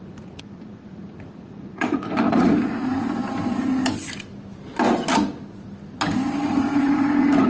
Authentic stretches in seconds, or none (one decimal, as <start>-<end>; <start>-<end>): 3.2-6.4

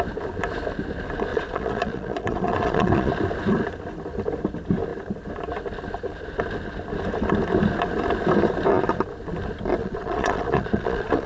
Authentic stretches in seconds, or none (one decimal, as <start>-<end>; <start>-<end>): 0.0-1.3; 3.1-9.8

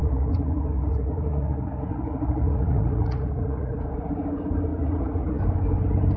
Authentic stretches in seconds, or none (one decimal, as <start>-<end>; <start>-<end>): 3.7-4.7; 5.4-6.2

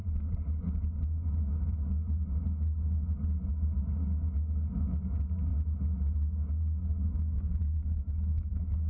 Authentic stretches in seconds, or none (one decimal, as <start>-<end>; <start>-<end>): 0.0-3.5; 5.5-6.5

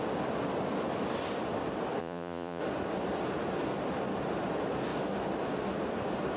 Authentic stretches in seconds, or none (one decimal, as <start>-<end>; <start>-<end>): 0.0-2.0; 2.6-6.4

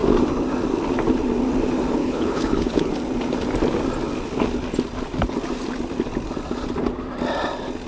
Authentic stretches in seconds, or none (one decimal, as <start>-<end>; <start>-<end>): 0.0-2.0; 2.9-7.9

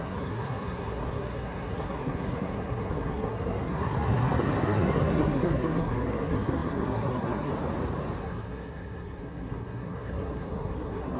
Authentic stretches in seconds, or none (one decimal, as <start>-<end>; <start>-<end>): 7.5-8.2